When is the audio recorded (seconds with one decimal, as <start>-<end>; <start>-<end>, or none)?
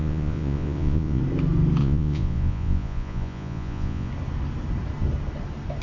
1.2-1.8; 4.1-5.8